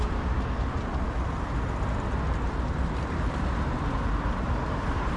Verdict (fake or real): real